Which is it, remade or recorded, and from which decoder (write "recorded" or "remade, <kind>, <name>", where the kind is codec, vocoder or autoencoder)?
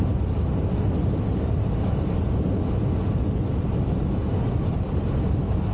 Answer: recorded